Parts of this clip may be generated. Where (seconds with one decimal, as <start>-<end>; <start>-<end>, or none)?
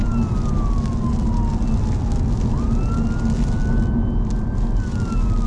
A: none